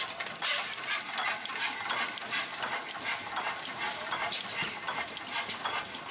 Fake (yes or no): yes